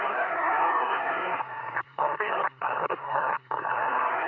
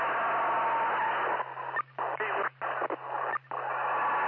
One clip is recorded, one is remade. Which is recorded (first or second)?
second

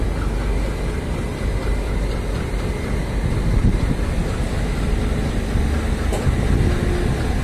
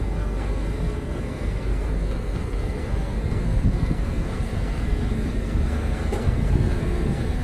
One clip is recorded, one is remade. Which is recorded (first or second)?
first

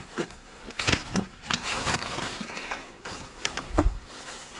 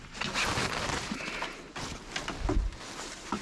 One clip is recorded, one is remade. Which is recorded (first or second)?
second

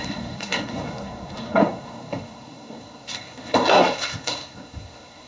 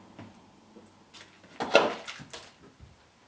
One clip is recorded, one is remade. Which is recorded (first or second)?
second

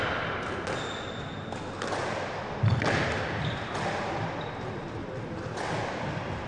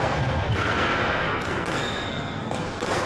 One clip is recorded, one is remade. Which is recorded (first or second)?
first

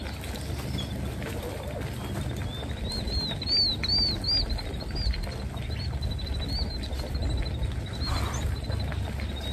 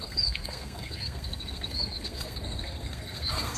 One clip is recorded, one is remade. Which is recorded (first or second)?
first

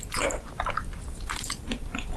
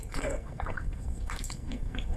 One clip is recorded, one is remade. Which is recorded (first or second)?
first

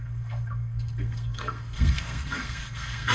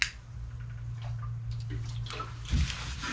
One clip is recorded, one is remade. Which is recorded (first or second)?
second